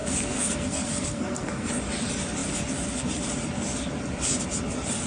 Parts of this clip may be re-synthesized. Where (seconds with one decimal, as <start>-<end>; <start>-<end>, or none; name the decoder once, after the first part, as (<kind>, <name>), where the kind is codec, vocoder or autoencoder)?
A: 0.0-1.7 (codec, SNAC)